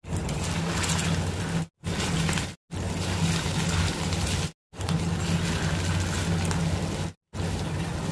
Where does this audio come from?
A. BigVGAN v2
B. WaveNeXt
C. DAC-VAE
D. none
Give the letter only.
D